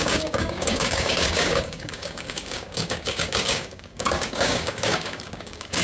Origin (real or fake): fake